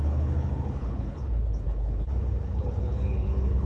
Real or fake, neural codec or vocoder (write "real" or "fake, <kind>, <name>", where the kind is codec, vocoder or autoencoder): fake, codec, HILCodec